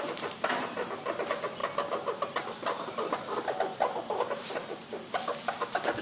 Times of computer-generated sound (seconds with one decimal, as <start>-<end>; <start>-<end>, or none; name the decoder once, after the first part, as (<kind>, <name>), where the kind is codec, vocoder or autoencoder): 0.0-1.6 (vocoder, BigVGAN v2); 3.2-4.6